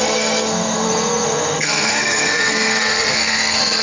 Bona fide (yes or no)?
no